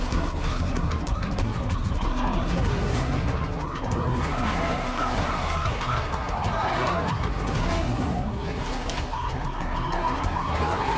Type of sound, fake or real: fake